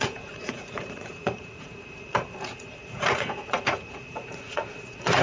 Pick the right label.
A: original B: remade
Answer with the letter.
B